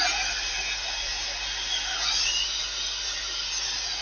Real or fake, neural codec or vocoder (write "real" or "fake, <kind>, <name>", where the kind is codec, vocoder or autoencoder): real